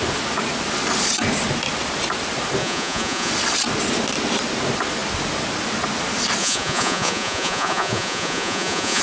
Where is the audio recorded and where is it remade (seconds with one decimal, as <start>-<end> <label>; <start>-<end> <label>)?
0.0-2.6 recorded; 2.6-3.3 remade; 3.3-6.4 recorded; 6.4-9.0 remade